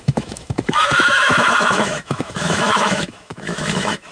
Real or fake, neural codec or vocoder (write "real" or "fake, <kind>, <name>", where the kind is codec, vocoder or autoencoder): fake, autoencoder, DAC-VAE